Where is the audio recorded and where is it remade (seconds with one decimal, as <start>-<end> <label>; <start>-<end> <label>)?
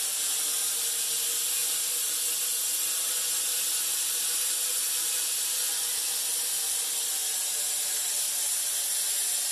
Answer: 0.0-7.2 recorded; 7.2-8.1 remade; 8.1-9.5 recorded